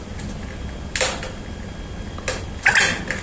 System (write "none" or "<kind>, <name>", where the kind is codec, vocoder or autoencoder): none